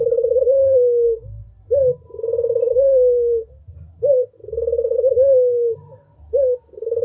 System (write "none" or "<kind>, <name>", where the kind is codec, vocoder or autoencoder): none